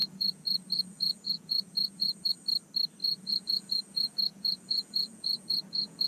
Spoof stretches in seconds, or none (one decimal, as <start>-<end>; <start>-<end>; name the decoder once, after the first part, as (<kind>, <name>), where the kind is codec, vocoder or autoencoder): 0.0-2.3 (vocoder, Vocos); 3.0-6.1